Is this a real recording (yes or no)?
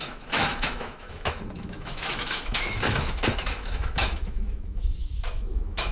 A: no